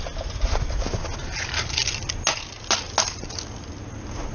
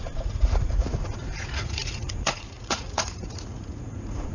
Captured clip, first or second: first